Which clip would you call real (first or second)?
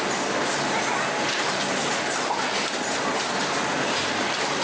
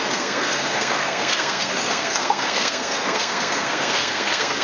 first